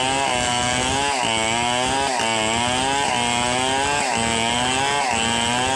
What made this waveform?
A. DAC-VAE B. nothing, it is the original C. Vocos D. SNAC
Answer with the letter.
B